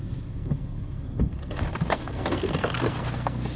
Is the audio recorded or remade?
remade